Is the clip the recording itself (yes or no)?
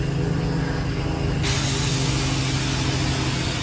yes